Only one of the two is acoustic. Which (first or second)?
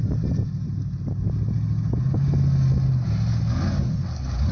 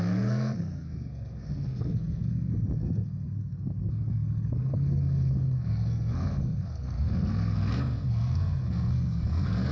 first